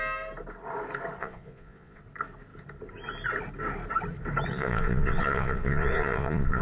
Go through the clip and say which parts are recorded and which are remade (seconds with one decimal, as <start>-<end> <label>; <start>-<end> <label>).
0.0-1.2 recorded; 1.2-2.0 remade; 2.0-4.5 recorded; 4.5-6.6 remade